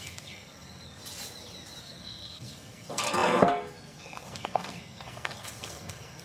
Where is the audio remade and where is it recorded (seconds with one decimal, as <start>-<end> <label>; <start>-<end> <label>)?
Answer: 0.0-1.0 remade; 1.0-1.8 recorded; 1.8-6.2 remade